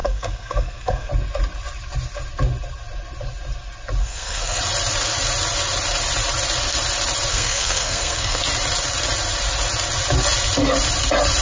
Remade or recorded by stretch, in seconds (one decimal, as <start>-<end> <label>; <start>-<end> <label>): 0.0-1.1 remade; 1.1-4.0 recorded; 4.0-4.6 remade; 4.6-7.3 recorded; 7.3-8.4 remade; 8.4-11.4 recorded